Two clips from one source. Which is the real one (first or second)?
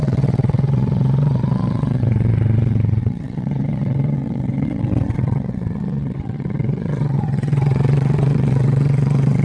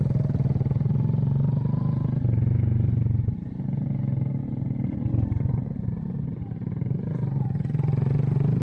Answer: second